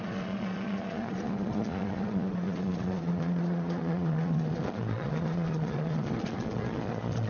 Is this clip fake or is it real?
fake